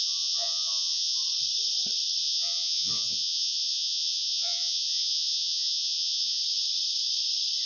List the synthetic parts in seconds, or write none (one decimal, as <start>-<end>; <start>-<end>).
0.0-1.2; 2.2-6.4